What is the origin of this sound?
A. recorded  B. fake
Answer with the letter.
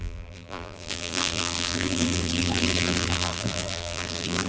B